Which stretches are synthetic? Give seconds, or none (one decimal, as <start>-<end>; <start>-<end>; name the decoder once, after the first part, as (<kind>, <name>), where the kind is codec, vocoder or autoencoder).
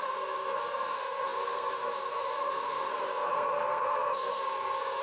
0.0-5.0 (codec, SNAC)